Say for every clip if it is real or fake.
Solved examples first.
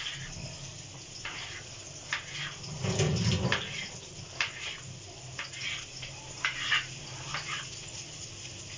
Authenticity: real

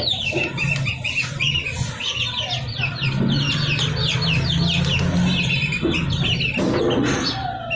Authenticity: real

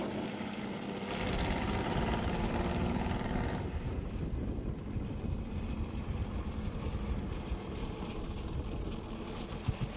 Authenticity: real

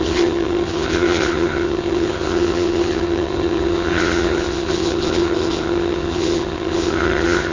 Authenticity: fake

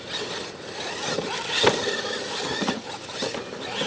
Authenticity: real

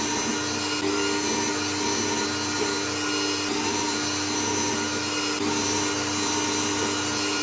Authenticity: real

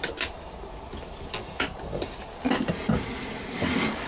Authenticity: real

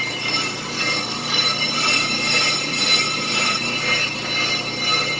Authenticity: real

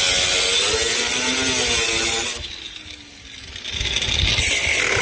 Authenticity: real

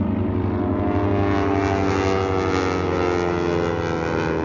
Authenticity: real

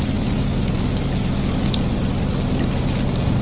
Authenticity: real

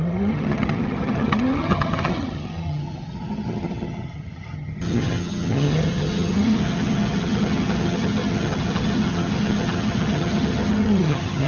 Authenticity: fake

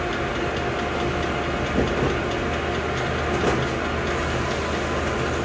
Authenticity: real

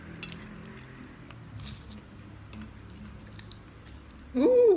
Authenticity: real